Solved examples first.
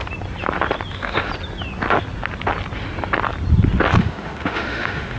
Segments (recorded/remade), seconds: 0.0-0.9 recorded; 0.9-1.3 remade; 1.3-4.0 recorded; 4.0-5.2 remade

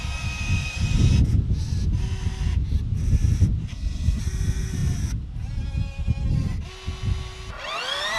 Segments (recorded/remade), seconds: 0.0-3.7 recorded; 3.7-4.2 remade; 4.2-8.2 recorded

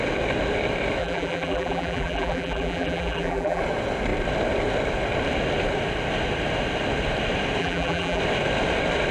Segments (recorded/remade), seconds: 0.0-1.0 recorded; 1.0-3.6 remade; 3.6-7.6 recorded; 7.6-8.2 remade; 8.2-9.1 recorded

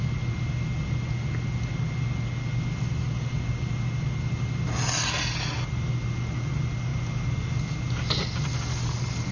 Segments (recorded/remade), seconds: 0.0-9.3 recorded

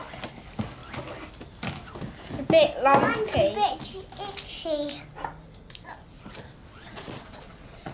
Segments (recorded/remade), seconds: 0.0-6.7 recorded; 6.7-7.9 remade